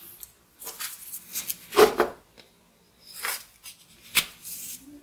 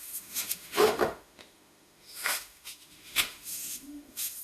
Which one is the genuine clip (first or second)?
first